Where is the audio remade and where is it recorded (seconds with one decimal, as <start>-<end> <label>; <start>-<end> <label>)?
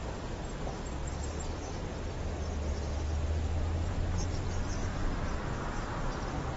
0.0-6.6 recorded